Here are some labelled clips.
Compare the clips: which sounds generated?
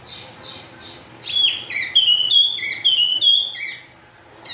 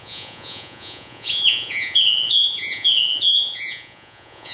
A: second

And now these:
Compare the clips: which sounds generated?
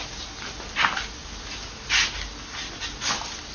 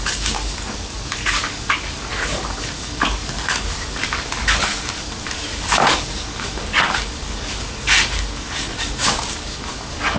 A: second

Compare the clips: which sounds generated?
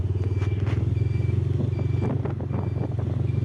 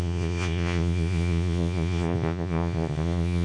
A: second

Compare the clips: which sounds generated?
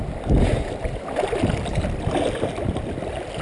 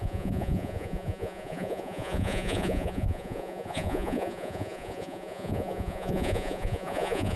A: second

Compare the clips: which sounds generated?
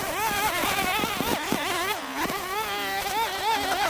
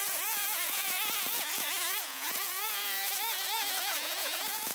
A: second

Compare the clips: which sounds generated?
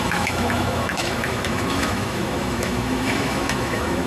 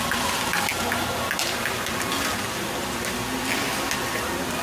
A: first